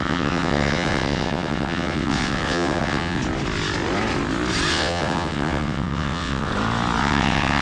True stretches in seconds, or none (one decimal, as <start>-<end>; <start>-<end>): 3.2-4.7; 6.5-7.0